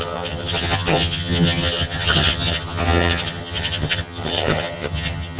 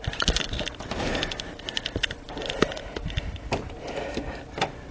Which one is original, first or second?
second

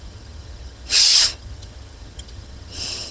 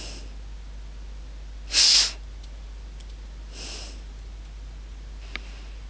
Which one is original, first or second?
second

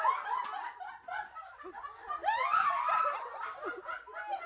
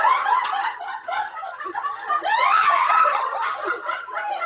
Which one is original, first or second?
first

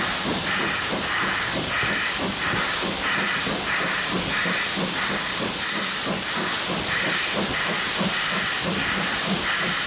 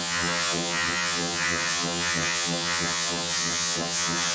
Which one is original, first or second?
first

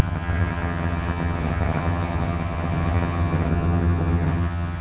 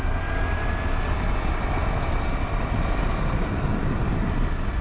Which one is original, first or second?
second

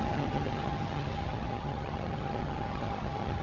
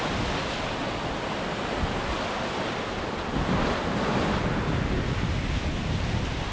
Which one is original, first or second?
second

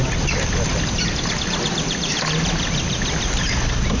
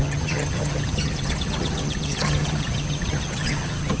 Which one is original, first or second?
first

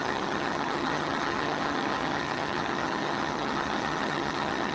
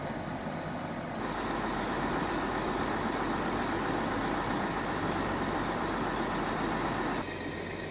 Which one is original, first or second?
second